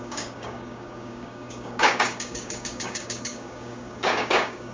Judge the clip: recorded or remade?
remade